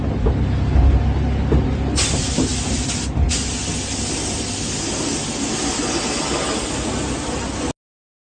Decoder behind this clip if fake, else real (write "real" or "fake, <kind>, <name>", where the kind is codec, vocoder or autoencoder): real